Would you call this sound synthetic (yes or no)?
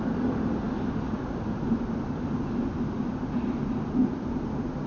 no